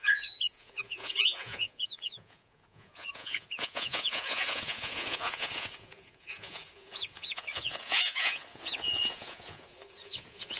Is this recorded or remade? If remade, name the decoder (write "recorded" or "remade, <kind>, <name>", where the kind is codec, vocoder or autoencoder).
remade, vocoder, Vocos